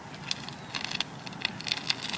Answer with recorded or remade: recorded